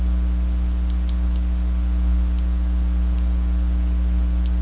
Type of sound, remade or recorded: recorded